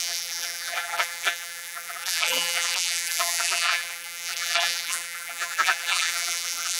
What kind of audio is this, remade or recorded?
remade